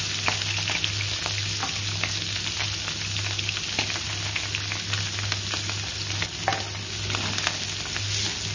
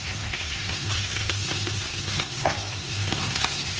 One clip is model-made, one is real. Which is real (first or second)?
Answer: first